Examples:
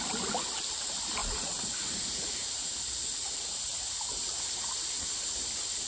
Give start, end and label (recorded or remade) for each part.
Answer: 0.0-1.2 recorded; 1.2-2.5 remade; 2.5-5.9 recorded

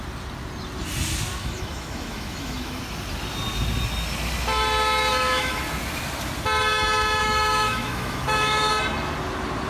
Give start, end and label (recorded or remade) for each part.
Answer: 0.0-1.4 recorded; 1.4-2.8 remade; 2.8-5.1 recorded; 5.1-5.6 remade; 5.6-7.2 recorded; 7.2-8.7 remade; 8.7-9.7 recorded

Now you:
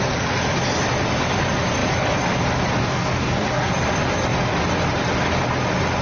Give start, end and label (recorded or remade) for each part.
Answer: 0.0-2.8 recorded; 2.8-3.7 remade; 3.7-6.0 recorded

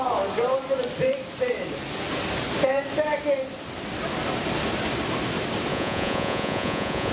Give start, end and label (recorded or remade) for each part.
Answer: 0.0-5.7 recorded; 5.7-7.1 remade